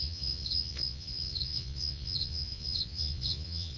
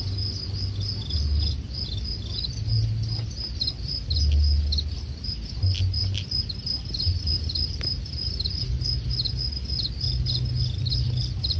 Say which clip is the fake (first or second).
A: first